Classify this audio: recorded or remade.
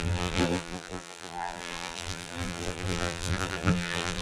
remade